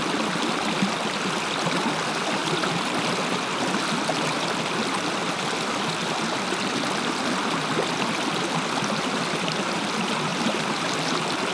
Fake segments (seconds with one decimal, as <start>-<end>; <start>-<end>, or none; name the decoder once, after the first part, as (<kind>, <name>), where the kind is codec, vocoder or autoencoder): none